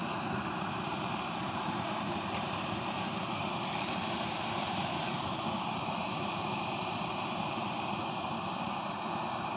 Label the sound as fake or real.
fake